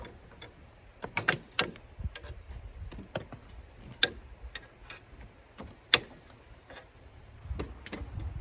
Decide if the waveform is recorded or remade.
recorded